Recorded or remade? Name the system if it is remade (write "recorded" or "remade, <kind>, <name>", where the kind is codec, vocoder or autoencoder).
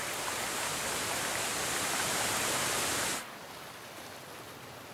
recorded